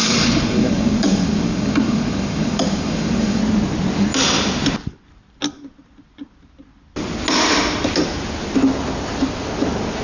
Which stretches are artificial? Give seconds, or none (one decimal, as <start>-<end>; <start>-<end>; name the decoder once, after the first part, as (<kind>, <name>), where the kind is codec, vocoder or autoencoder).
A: 0.0-3.4 (codec, DAC)